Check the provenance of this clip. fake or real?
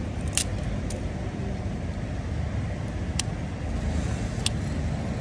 real